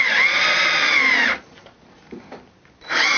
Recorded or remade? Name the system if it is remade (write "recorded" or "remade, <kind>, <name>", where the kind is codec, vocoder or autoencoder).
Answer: recorded